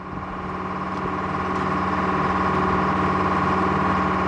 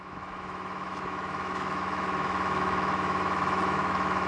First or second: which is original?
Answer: first